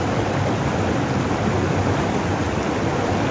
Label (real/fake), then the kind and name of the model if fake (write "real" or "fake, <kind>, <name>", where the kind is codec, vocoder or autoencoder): real